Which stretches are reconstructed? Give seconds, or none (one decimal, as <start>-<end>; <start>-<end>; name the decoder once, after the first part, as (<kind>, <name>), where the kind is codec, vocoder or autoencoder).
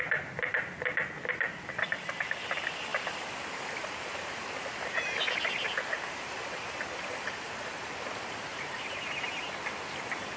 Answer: 8.5-9.3 (vocoder, BigVGAN v2)